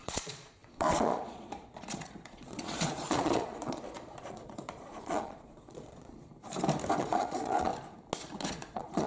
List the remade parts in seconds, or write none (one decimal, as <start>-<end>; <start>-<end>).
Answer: 0.0-6.3; 7.0-7.7; 8.2-9.1